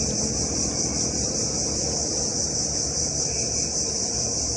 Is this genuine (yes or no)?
yes